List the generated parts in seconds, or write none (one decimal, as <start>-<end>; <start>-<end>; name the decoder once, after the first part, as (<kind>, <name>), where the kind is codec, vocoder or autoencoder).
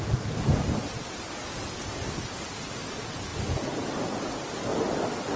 none